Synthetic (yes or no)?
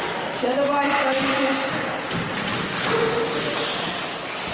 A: no